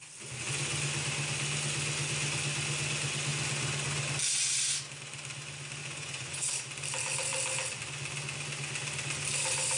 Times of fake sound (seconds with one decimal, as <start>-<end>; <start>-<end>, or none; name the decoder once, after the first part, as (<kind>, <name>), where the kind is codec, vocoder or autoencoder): 5.8-6.5 (vocoder, Vocos)